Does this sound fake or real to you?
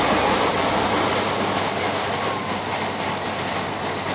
real